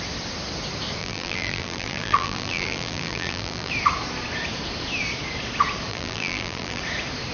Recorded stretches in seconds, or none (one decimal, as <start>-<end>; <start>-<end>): 0.0-1.0; 3.7-5.9; 6.8-7.3